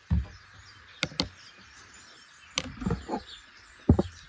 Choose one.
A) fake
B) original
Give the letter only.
B